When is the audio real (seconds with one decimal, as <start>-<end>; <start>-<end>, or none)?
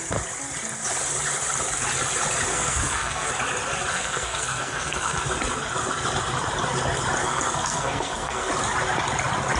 0.0-2.5; 3.3-3.9; 5.2-7.2; 8.5-9.6